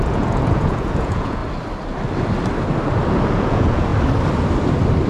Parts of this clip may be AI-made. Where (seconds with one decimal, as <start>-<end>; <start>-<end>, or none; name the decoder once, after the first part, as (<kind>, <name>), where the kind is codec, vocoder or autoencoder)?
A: 0.0-1.4 (vocoder, Vocos); 3.3-3.9

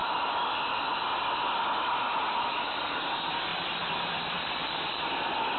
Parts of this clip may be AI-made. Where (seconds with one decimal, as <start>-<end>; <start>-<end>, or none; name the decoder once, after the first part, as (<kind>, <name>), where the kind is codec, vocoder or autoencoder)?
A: 0.0-3.0 (vocoder, BigVGAN v2); 3.5-4.7

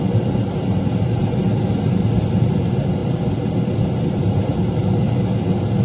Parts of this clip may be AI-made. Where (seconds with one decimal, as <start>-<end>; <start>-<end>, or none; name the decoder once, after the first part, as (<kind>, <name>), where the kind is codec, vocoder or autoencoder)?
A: 1.2-2.6 (vocoder, BigVGAN v2); 3.0-5.1